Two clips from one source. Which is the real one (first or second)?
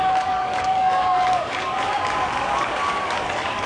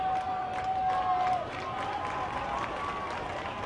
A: second